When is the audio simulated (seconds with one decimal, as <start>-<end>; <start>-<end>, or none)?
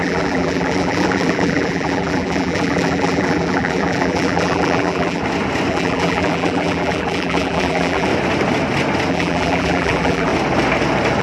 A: 0.0-5.2; 5.7-8.1; 9.1-10.3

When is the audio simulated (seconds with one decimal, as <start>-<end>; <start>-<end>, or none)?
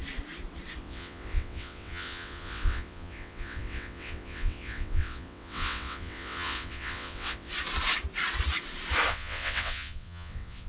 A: 0.8-7.5; 9.1-10.7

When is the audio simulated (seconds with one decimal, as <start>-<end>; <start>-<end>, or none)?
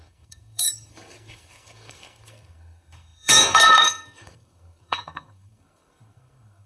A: 0.0-6.7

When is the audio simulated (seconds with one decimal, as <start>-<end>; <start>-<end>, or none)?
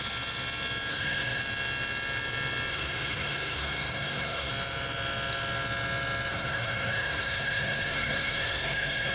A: 0.9-1.4; 2.7-4.5; 6.3-9.1